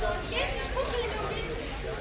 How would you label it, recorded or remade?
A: recorded